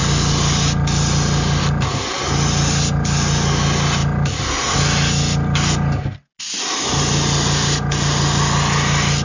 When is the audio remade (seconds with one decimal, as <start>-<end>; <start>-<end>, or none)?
none